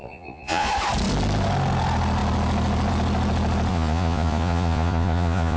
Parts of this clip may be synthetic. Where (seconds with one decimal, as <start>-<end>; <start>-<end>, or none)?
0.0-0.7; 3.7-5.6